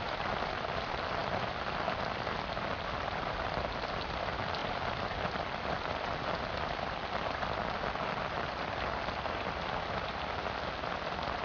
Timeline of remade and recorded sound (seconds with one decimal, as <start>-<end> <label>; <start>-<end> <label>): 0.0-11.4 recorded